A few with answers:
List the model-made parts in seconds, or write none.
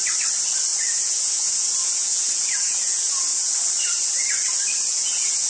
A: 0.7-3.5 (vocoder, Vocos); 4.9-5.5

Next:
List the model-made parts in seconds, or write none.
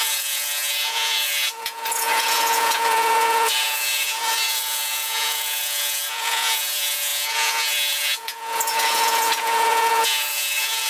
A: 0.0-10.9 (vocoder, Vocos)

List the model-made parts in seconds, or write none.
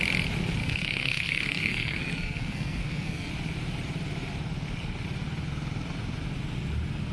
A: 0.6-3.3 (codec, SNAC)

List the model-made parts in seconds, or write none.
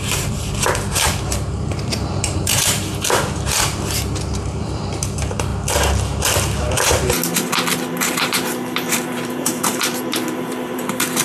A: 0.0-2.9 (vocoder, BigVGAN v2); 4.3-5.5; 8.0-11.2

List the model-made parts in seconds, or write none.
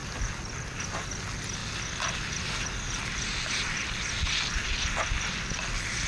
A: 1.6-5.3 (vocoder, BigVGAN v2)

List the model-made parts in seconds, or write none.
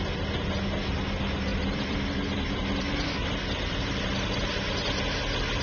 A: 1.5-4.6 (vocoder, BigVGAN v2)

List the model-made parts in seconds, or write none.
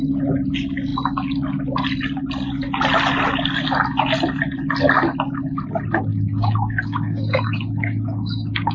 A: 6.1-8.7 (codec, DAC)